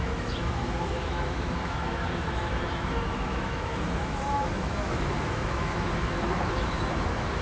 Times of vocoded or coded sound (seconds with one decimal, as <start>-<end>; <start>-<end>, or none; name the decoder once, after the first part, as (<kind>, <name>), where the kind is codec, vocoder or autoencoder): 0.0-7.4 (autoencoder, DAC-VAE)